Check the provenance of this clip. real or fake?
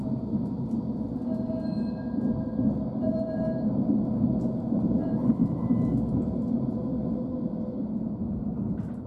real